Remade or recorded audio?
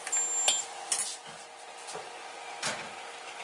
recorded